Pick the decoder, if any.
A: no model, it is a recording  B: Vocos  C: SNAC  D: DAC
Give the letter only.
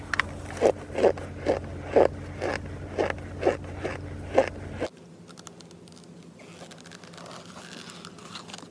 A